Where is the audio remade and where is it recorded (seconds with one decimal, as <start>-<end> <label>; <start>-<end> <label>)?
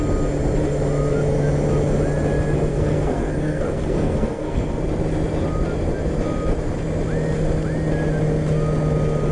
0.0-2.7 recorded; 2.7-4.7 remade; 4.7-9.3 recorded